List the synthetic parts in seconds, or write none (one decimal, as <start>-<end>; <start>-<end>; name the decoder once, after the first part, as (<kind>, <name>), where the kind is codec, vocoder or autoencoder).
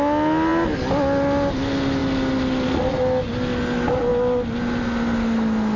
none